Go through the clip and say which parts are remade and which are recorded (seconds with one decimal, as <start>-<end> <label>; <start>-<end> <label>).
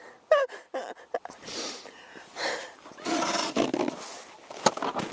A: 0.0-0.8 recorded; 0.8-2.9 remade; 2.9-5.1 recorded